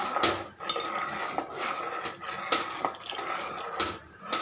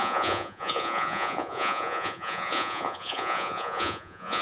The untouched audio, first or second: first